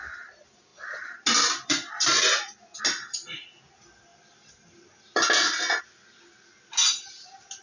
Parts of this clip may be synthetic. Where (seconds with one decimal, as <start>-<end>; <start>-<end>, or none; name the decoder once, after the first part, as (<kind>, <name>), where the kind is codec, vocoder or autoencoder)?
none